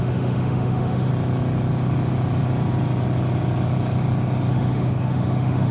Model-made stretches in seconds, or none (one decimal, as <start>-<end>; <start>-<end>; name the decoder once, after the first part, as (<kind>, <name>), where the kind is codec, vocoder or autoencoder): 0.0-1.1 (autoencoder, DAC-VAE); 4.5-5.7